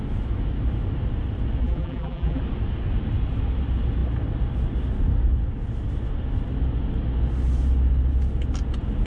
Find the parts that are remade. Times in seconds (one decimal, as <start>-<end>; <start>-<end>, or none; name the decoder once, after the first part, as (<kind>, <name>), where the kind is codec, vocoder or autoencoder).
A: 1.6-2.4 (vocoder, BigVGAN v2)